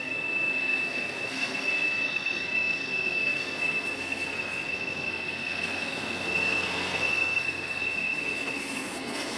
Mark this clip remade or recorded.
remade